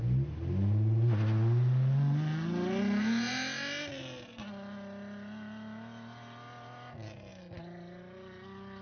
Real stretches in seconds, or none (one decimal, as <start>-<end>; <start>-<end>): 0.0-8.8